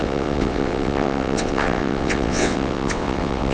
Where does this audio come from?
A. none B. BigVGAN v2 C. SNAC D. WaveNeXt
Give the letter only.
D